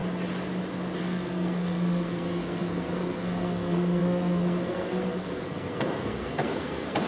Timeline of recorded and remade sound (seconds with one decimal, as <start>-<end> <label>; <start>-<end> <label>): 0.0-1.0 recorded; 1.0-7.1 remade